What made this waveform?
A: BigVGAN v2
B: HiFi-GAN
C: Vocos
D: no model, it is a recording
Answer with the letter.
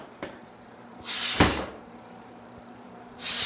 A